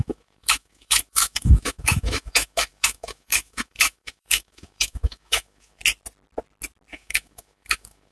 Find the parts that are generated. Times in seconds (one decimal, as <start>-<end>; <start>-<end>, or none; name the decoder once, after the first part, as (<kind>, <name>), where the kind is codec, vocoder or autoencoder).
0.0-5.8 (autoencoder, DAC-VAE); 6.9-8.1